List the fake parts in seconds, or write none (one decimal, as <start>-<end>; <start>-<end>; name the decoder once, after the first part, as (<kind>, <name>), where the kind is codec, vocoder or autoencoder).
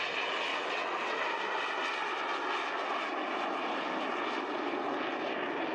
0.5-1.2 (vocoder, WaveNeXt)